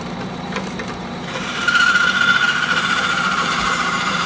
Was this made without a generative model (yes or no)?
no